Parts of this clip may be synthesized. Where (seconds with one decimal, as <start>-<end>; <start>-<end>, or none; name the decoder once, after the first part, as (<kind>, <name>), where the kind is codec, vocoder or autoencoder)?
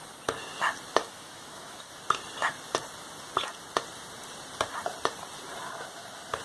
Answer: 1.0-1.9 (autoencoder, DAC-VAE)